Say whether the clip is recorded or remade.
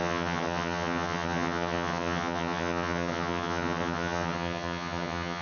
remade